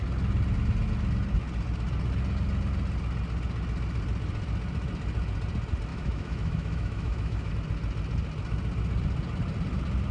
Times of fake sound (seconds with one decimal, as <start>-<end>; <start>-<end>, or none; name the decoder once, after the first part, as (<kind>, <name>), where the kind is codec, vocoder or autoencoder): 5.9-7.5 (autoencoder, DAC-VAE)